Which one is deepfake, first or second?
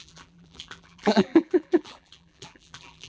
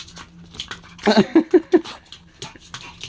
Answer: first